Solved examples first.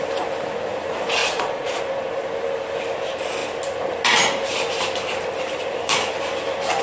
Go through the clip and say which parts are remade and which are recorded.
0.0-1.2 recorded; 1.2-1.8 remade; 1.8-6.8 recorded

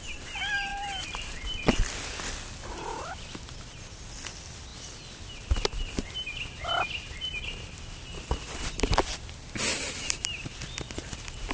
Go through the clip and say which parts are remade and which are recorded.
0.0-0.7 recorded; 0.7-1.9 remade; 1.9-9.7 recorded; 9.7-11.1 remade; 11.1-11.5 recorded

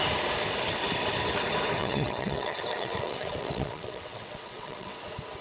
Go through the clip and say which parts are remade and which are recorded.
0.0-1.8 recorded; 1.8-5.0 remade; 5.0-5.4 recorded

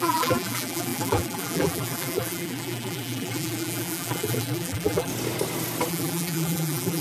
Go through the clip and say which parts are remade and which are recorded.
0.0-5.1 remade; 5.1-5.9 recorded; 5.9-7.0 remade